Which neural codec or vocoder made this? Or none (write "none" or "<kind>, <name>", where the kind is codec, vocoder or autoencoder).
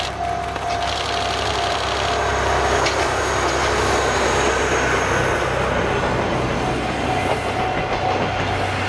none